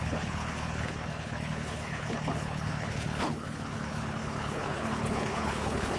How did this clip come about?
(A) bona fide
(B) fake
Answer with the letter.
B